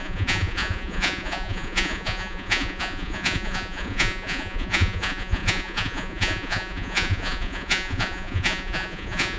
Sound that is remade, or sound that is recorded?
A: remade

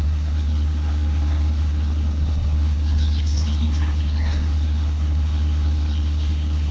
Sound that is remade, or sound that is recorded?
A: remade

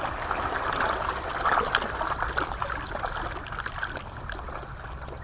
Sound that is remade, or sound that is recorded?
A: recorded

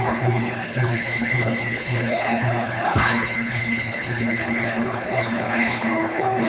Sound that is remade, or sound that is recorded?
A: remade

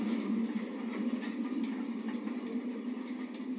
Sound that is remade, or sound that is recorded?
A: recorded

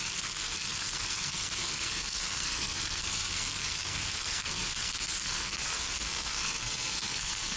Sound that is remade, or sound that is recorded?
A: remade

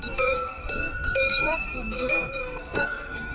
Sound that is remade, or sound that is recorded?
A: remade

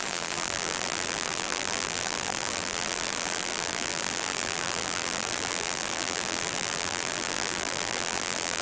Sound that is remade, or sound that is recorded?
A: remade